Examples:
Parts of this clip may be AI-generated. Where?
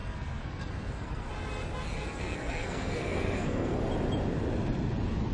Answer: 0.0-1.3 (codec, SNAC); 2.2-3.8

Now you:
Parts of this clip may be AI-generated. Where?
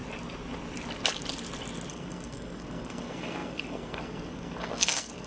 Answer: 1.9-5.3 (codec, SNAC)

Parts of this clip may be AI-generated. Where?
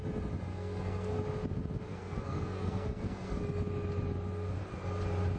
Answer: 0.5-1.2 (codec, SNAC); 1.9-3.4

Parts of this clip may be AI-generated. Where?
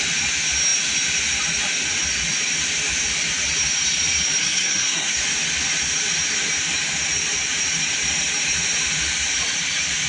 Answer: 4.4-5.2 (codec, SNAC)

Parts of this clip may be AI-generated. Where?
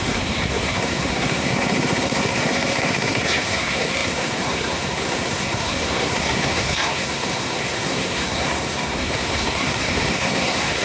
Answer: 0.0-10.8 (codec, SNAC)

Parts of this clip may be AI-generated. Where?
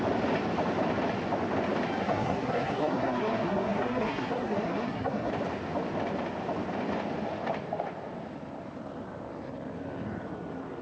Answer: 2.0-5.3 (codec, SNAC)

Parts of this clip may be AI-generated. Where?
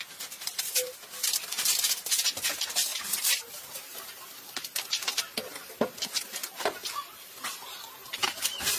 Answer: none